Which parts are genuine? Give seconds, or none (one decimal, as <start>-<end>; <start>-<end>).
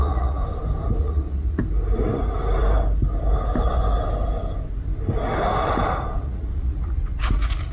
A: 0.4-1.0; 1.6-6.2